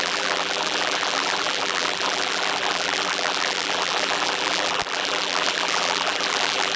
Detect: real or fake fake